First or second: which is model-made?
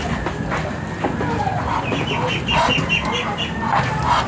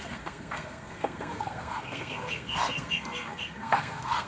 second